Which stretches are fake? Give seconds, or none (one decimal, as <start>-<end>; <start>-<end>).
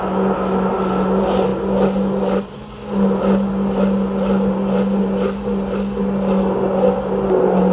none